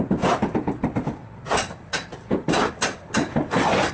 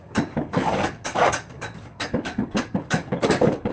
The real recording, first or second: first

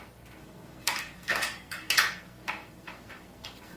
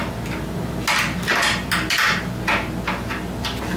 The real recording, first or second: second